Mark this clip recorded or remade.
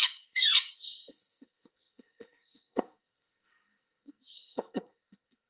remade